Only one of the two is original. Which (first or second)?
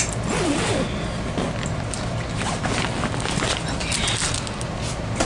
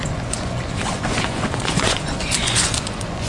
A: first